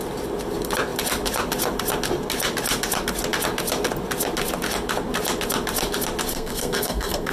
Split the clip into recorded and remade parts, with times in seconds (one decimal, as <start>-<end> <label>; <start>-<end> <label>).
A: 0.0-6.3 recorded; 6.3-7.3 remade